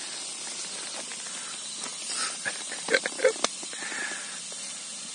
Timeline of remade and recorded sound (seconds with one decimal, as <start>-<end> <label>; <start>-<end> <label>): 0.0-1.9 recorded; 1.9-5.1 remade